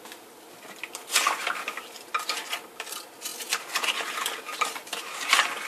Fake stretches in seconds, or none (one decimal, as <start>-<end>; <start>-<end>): 4.5-5.7